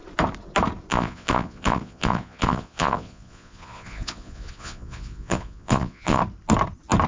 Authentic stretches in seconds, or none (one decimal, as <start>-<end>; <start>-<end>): 0.0-0.9; 6.2-7.1